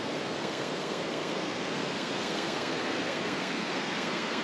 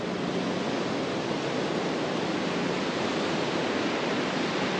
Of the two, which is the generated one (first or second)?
first